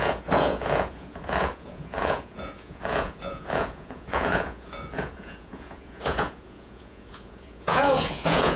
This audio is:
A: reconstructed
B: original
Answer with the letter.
A